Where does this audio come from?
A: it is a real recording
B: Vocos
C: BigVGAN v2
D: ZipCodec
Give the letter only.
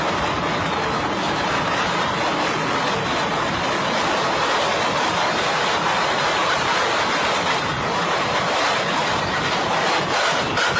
C